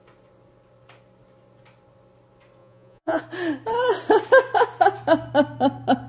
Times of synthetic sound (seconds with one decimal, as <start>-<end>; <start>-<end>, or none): 2.6-3.2